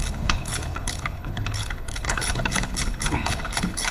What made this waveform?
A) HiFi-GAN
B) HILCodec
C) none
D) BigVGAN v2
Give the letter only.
B